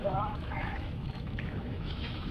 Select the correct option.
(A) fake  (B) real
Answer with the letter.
A